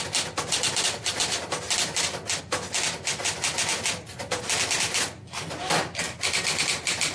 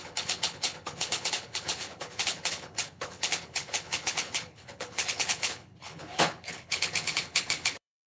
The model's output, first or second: second